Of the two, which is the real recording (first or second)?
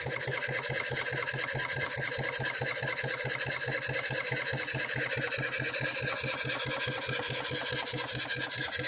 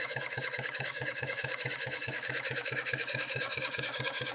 first